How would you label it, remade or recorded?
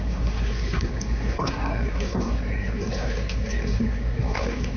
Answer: remade